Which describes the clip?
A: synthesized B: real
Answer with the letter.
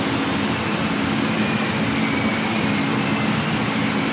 B